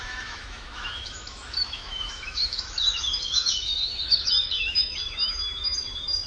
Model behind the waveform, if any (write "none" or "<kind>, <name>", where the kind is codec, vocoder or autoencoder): autoencoder, DAC-VAE